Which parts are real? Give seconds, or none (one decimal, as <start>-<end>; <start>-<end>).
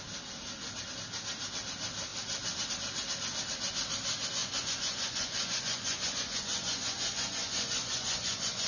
0.0-4.4